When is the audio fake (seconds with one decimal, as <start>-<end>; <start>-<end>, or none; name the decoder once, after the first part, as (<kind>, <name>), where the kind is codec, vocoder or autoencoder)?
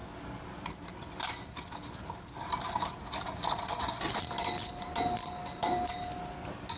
none